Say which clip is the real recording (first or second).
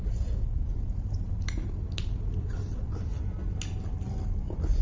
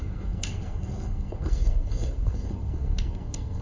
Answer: first